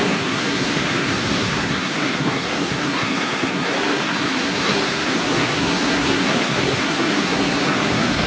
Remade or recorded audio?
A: remade